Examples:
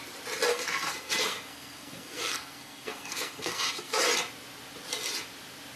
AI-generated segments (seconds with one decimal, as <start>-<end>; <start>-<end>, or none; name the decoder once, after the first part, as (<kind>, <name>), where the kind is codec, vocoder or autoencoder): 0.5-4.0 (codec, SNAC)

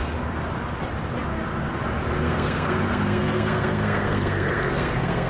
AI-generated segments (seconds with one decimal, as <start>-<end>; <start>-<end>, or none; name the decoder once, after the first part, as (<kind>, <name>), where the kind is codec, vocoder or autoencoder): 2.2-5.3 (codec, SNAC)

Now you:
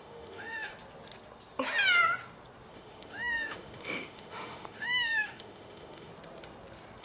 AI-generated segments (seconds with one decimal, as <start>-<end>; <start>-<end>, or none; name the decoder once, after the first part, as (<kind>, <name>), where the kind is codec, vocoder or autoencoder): 0.0-0.7 (autoencoder, DAC-VAE); 2.7-6.1